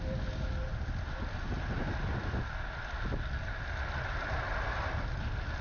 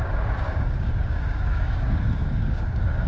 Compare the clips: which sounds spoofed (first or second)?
second